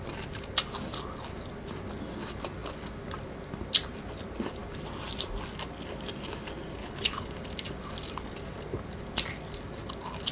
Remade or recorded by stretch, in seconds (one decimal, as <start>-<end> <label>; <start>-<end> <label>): 0.0-6.8 recorded; 6.8-7.3 remade; 7.3-10.3 recorded